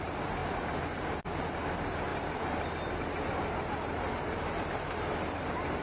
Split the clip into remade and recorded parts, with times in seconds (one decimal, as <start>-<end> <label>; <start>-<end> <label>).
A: 0.0-2.1 recorded; 2.1-3.0 remade; 3.0-5.8 recorded